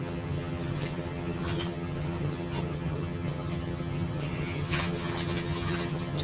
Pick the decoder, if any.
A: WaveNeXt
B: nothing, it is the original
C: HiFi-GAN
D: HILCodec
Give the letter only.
C